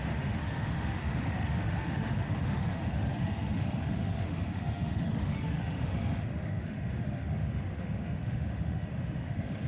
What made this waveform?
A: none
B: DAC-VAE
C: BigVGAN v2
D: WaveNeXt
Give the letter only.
B